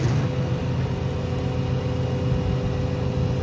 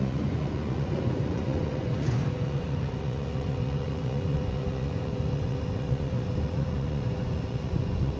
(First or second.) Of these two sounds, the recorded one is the first